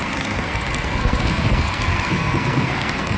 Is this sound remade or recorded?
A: remade